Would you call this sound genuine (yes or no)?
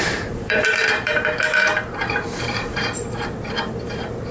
no